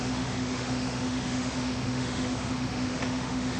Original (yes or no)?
no